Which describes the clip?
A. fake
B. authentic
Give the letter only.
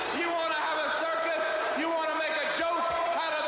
B